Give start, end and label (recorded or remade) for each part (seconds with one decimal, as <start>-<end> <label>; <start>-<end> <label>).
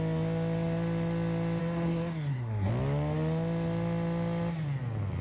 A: 0.0-1.6 recorded; 1.6-2.7 remade; 2.7-5.2 recorded